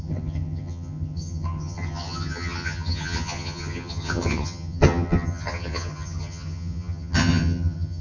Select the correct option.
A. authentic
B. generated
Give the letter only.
B